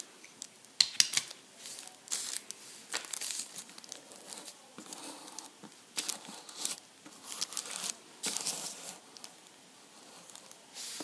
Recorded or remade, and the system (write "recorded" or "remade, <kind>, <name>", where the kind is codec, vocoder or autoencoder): recorded